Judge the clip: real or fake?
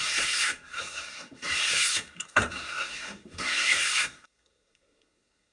fake